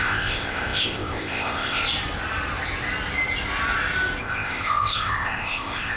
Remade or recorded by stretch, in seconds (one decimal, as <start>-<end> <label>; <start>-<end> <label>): 0.0-1.8 remade; 1.8-4.2 recorded; 4.2-6.0 remade